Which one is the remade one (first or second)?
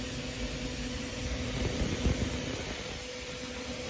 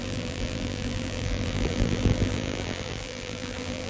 second